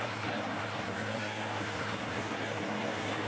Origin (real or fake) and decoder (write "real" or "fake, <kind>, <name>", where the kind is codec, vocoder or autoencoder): fake, codec, SNAC